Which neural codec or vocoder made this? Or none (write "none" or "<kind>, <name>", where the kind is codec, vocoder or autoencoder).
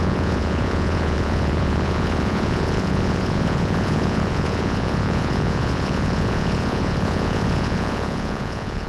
vocoder, Vocos